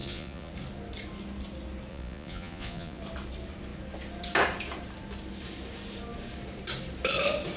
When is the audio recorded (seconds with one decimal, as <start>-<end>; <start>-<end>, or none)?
0.5-1.9; 3.0-7.6